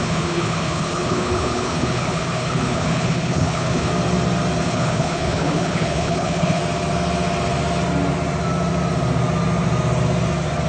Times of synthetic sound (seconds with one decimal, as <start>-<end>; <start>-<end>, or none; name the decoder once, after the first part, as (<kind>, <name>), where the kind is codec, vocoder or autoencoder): 0.0-3.9 (codec, HILCodec); 4.6-6.6